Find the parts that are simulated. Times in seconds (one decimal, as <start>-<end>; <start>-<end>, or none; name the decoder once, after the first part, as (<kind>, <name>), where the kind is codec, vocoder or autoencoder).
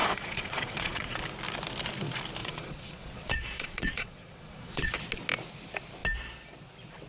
0.0-1.2 (vocoder, Vocos); 2.4-4.9